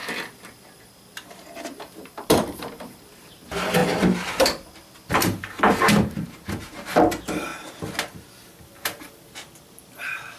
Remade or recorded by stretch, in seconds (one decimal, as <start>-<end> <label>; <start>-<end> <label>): 0.0-0.8 recorded; 0.8-3.8 remade; 3.8-5.1 recorded; 5.1-7.5 remade; 7.5-8.4 recorded; 8.4-10.4 remade